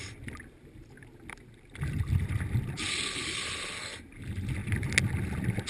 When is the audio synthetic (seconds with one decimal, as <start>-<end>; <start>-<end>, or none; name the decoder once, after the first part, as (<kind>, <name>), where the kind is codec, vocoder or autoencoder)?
none